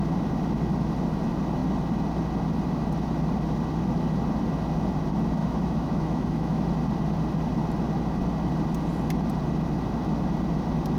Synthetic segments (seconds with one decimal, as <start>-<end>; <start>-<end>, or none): 5.4-6.6